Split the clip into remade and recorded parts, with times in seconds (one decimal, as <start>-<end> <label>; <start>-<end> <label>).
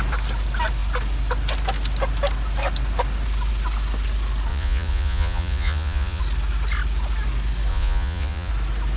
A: 0.0-4.5 recorded; 4.5-6.2 remade; 6.2-7.7 recorded; 7.7-8.5 remade; 8.5-9.0 recorded